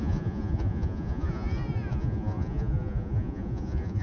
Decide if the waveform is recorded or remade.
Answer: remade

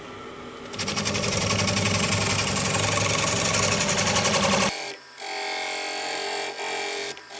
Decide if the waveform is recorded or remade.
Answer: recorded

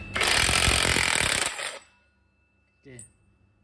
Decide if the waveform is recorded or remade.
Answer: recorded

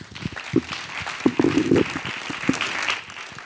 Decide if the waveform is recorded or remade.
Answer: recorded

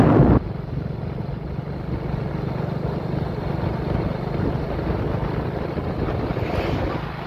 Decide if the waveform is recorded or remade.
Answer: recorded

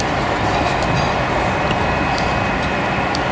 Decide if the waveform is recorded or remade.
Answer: recorded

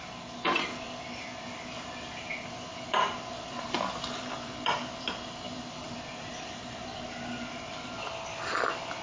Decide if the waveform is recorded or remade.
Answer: recorded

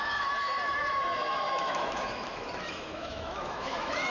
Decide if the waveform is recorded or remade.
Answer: remade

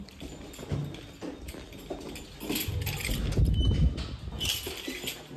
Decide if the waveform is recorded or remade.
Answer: recorded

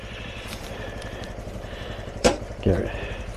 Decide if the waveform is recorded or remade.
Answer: remade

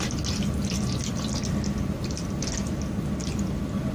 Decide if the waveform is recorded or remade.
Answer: recorded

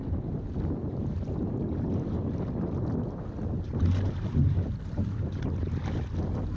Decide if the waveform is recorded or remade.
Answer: recorded